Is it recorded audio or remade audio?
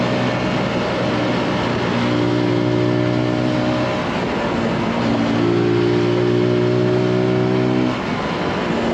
recorded